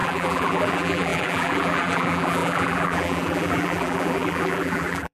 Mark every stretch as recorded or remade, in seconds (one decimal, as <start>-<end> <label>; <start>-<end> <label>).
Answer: 0.0-5.1 remade